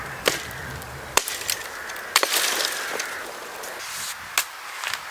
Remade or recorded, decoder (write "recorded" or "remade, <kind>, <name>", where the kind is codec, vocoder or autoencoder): recorded